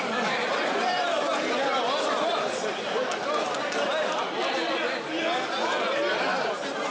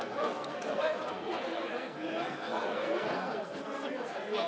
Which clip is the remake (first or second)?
second